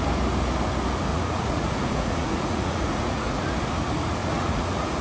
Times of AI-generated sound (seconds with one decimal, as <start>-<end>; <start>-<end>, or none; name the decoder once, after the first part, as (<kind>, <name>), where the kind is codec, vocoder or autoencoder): 1.1-3.4 (vocoder, Vocos); 4.2-5.0